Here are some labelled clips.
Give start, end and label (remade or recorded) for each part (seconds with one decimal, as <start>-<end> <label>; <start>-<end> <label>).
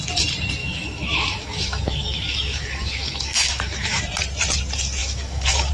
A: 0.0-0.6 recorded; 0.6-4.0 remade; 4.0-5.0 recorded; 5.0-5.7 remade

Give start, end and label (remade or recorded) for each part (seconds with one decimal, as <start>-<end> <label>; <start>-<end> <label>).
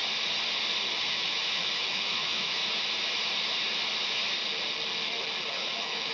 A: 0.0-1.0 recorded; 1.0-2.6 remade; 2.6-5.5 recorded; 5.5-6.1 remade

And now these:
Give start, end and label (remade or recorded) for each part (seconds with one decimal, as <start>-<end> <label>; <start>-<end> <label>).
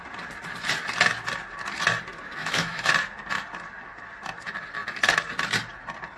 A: 0.0-2.4 recorded; 2.4-2.9 remade; 2.9-6.2 recorded